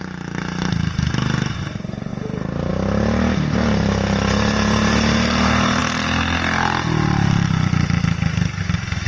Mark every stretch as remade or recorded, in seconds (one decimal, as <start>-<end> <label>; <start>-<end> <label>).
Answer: 0.0-9.1 recorded